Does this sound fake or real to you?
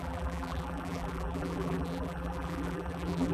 fake